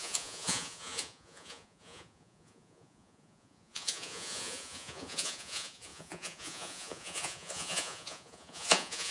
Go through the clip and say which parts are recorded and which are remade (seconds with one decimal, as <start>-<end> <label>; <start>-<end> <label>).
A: 0.0-9.1 remade